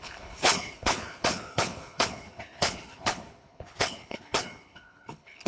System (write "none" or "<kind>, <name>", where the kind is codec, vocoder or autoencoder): codec, HILCodec